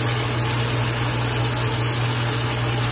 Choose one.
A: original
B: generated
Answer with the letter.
A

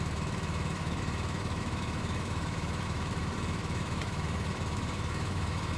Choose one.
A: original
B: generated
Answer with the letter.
B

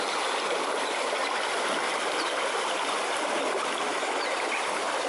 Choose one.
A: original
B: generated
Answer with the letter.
A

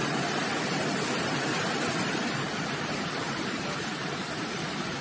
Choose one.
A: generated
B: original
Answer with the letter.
B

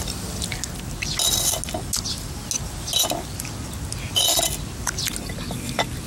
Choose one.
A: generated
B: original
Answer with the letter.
B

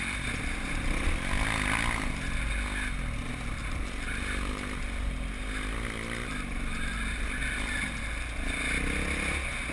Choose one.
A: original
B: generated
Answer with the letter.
A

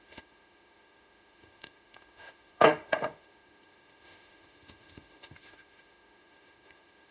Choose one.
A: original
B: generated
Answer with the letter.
B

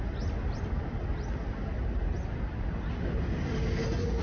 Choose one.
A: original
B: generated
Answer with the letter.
A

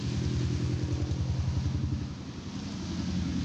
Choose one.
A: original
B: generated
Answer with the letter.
A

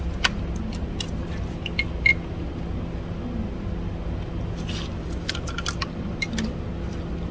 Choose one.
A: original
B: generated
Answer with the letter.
A